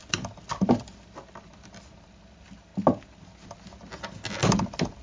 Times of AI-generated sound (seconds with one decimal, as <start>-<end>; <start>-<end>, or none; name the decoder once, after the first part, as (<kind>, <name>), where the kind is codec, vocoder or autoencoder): 0.0-2.7 (vocoder, BigVGAN v2)